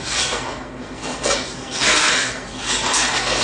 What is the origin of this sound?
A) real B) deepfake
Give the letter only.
B